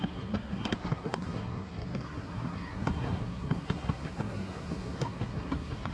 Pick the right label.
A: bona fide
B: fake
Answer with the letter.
B